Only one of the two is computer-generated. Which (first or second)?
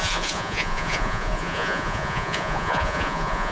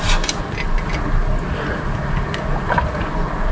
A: first